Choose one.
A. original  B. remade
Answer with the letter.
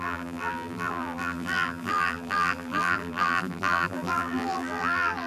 B